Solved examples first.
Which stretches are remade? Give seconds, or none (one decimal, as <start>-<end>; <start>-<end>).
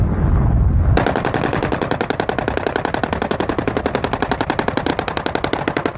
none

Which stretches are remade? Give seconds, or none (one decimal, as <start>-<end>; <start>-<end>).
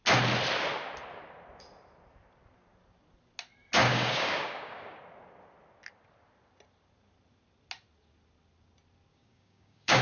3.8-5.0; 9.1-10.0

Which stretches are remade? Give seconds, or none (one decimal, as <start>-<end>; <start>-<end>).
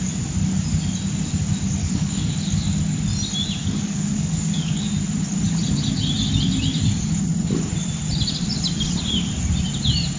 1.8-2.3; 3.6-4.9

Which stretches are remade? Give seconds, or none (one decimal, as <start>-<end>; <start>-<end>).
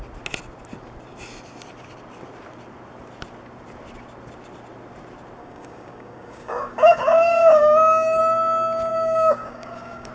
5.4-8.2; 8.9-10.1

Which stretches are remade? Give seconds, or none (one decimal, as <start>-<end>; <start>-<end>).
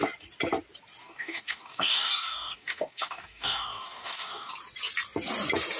1.0-4.5